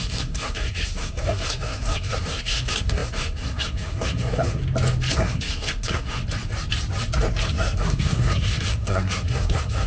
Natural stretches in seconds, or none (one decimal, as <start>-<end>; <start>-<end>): 4.6-5.1; 6.2-7.5